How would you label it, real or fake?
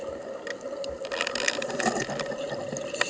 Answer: real